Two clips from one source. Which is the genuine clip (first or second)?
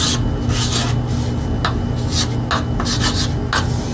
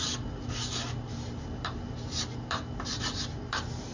first